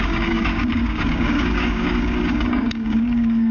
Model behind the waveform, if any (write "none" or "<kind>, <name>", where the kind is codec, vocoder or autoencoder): codec, DAC